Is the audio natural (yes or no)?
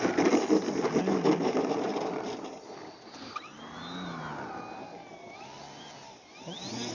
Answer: yes